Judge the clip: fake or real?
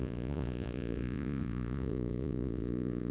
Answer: fake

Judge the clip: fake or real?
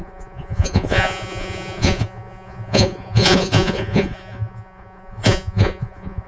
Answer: fake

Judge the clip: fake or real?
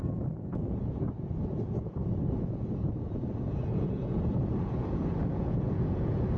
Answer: fake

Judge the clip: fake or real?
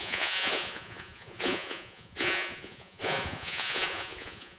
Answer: fake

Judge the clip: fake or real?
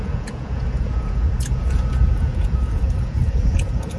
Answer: fake